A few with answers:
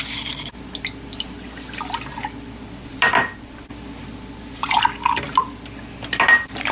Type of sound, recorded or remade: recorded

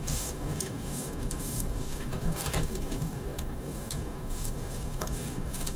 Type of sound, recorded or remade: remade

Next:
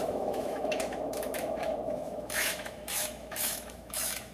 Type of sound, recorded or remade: remade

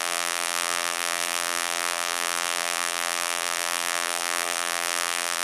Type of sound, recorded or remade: remade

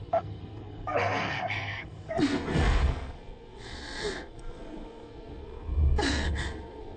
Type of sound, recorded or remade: remade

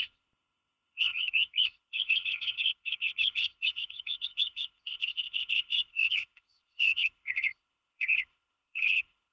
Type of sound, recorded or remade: remade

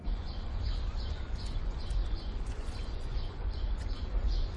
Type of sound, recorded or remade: remade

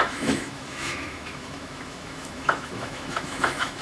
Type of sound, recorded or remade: remade